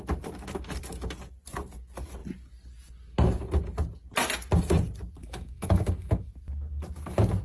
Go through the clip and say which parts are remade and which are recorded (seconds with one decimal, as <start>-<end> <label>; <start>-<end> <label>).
0.0-5.2 recorded; 5.2-6.3 remade; 6.3-7.4 recorded